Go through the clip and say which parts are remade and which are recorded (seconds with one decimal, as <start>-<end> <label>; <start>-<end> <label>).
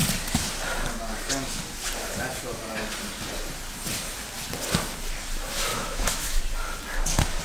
0.0-5.7 recorded; 5.7-6.4 remade; 6.4-7.4 recorded